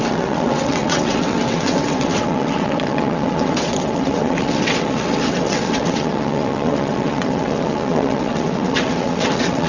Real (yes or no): no